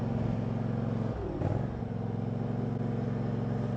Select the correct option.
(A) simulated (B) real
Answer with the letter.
B